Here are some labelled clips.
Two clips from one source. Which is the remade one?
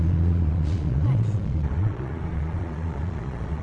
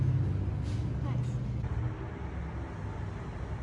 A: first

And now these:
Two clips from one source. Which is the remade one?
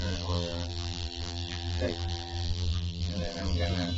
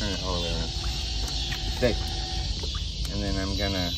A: first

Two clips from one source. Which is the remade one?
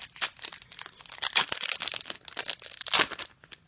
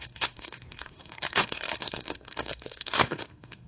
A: second